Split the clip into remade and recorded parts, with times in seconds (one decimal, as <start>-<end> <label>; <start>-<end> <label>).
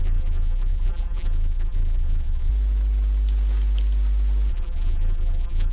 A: 0.0-2.5 remade; 2.5-4.5 recorded; 4.5-5.7 remade